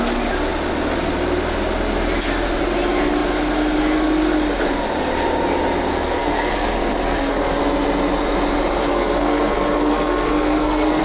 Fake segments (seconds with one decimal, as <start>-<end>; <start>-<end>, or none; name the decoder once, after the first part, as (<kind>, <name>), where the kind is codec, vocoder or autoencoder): 5.9-7.6 (codec, SNAC); 8.9-11.0